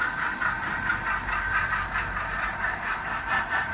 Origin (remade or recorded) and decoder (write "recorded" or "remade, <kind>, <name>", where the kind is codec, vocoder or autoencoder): recorded